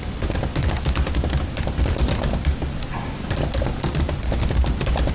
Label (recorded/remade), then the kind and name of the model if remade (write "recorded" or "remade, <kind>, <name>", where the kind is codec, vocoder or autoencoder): recorded